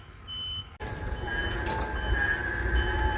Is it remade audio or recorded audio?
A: recorded